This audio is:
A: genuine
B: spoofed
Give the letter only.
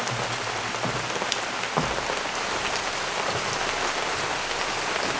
A